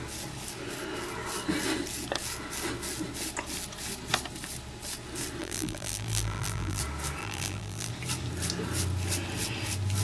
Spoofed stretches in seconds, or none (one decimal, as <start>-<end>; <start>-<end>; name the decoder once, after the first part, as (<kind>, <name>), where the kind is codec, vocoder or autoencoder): 5.4-6.8 (vocoder, BigVGAN v2); 7.2-7.9

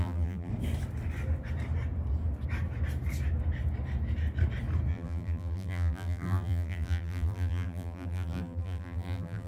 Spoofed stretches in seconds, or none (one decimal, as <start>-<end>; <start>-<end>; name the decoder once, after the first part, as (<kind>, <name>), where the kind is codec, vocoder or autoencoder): 0.0-0.5 (vocoder, BigVGAN v2); 4.9-9.5

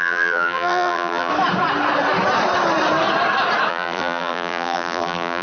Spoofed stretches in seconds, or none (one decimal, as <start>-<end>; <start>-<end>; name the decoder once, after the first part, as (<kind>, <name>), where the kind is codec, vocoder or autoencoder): 0.0-1.3 (vocoder, BigVGAN v2); 3.7-5.4

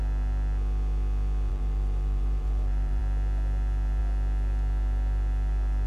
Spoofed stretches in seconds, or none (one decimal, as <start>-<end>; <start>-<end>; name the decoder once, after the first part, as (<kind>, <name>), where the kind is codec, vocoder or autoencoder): 1.5-3.0 (vocoder, BigVGAN v2)

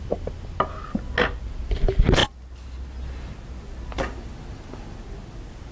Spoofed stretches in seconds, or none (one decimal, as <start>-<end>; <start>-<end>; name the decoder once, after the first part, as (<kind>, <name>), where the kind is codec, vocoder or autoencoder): none

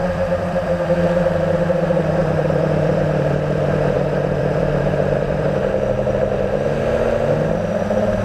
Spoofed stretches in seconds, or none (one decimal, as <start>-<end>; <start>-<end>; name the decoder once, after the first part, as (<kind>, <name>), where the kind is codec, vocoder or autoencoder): 0.0-0.9 (vocoder, BigVGAN v2); 2.2-5.6

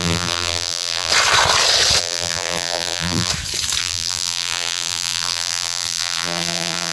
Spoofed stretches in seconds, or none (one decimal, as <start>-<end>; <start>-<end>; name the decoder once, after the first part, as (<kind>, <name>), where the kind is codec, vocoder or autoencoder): 0.0-1.1 (vocoder, BigVGAN v2); 2.0-3.3; 3.8-6.9